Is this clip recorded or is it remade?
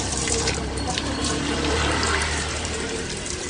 remade